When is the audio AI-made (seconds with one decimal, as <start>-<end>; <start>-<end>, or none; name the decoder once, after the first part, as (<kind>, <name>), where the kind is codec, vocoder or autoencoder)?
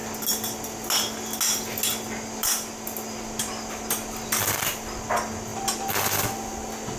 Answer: none